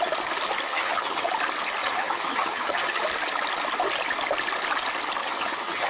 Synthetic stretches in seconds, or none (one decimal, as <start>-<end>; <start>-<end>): 0.7-1.3; 1.8-3.0; 5.2-5.9